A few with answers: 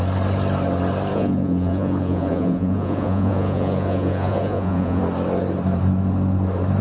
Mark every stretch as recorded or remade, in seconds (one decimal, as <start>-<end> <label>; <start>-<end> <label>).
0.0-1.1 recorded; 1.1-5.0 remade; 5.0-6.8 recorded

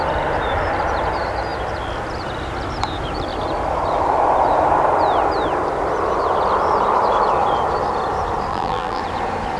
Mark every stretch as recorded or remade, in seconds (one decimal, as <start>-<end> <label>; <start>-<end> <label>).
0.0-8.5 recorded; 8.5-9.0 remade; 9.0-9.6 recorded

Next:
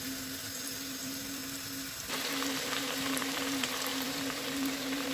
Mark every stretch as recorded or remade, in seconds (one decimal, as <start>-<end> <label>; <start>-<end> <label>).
0.0-1.4 remade; 1.4-2.0 recorded; 2.0-5.1 remade

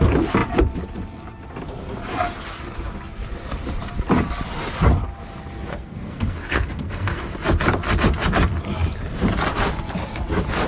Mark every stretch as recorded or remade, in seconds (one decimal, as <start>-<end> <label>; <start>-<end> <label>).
0.0-5.7 recorded; 5.7-7.2 remade; 7.2-10.7 recorded